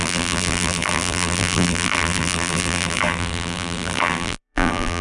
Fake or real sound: fake